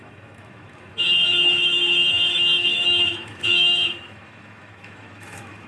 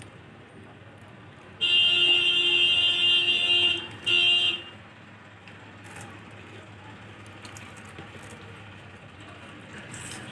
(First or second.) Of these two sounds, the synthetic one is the first